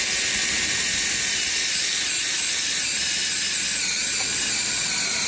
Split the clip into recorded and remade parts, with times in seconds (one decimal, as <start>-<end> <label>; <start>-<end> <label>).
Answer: 0.0-0.5 recorded; 0.5-1.9 remade; 1.9-3.2 recorded; 3.2-5.3 remade